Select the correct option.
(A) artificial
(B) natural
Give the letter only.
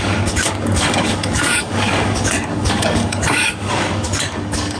A